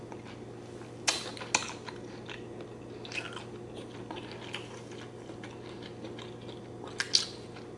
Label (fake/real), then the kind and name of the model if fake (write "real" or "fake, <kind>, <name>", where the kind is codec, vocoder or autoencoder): real